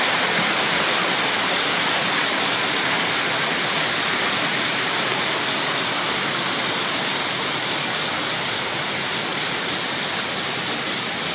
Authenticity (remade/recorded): recorded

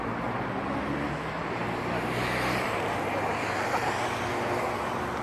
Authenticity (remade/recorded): recorded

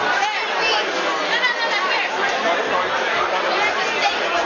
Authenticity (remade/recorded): recorded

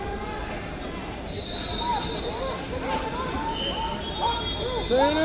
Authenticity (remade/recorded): recorded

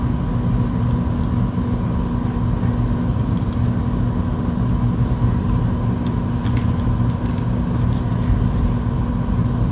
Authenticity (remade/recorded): recorded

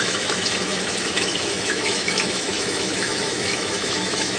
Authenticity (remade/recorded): remade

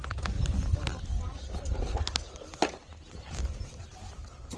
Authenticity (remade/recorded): recorded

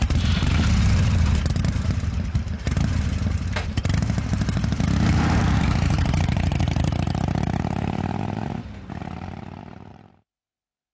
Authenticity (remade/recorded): remade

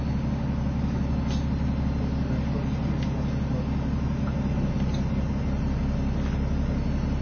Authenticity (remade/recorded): recorded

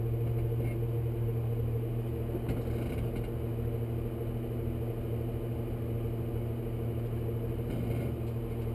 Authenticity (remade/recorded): recorded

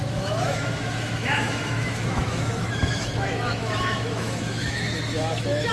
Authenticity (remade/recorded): remade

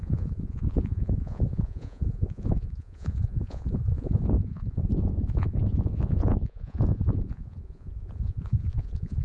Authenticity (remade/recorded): remade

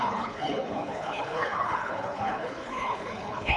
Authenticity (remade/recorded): remade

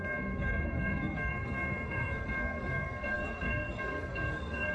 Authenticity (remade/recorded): remade